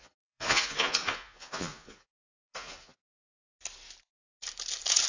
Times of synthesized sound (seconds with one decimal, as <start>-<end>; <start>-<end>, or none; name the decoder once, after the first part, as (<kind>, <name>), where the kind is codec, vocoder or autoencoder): 0.0-3.3 (vocoder, Vocos)